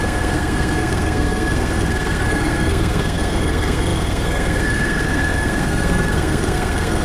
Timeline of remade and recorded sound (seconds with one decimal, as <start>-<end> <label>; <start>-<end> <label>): 0.0-7.0 remade